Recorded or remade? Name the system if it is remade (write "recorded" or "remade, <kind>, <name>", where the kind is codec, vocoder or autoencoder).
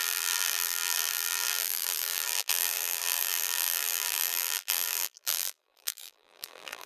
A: remade, vocoder, BigVGAN v2